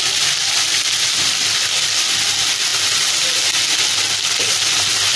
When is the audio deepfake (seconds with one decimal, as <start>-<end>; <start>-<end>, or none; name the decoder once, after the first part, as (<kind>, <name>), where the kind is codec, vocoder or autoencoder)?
none